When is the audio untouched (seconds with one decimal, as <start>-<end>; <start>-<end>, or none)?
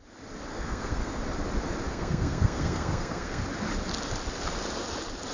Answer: 0.0-0.5; 1.2-1.9; 3.4-5.3